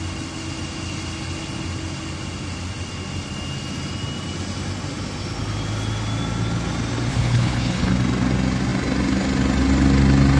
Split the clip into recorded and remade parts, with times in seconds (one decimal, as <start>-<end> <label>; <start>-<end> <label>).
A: 0.0-7.1 recorded; 7.1-7.9 remade; 7.9-10.4 recorded